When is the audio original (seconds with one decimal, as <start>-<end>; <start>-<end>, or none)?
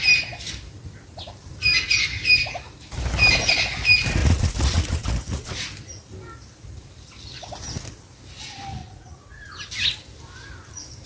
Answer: 0.0-4.2; 5.5-8.8; 9.5-11.1